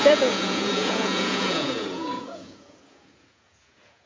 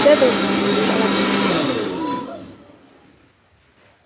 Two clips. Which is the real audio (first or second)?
second